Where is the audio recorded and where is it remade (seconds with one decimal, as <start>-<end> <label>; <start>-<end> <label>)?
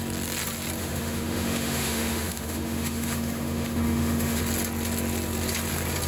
0.0-0.8 recorded; 0.8-4.4 remade; 4.4-6.1 recorded